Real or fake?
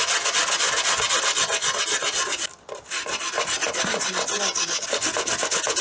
real